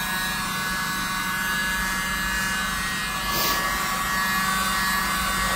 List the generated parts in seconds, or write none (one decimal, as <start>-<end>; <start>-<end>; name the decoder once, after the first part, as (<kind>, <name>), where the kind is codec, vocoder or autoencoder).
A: none